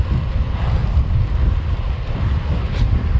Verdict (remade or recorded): recorded